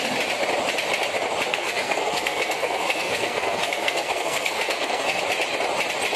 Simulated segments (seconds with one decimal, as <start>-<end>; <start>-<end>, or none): 1.5-5.2

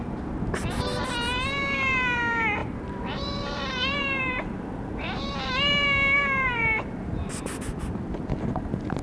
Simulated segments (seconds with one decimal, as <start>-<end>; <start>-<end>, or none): 1.0-2.2; 2.6-7.6

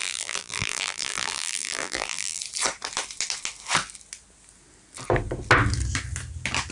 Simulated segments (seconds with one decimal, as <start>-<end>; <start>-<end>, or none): 0.0-2.4

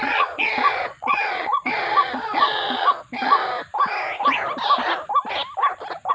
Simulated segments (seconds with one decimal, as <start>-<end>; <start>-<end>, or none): 0.0-3.4

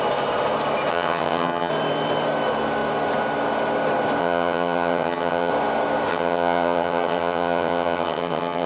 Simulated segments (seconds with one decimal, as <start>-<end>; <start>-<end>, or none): 0.9-1.7; 4.2-5.5; 6.1-8.7

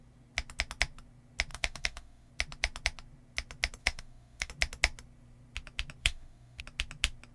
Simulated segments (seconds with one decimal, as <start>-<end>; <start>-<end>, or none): 1.5-2.3; 3.8-4.5; 6.0-6.6